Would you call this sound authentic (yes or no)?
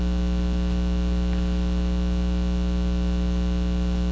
yes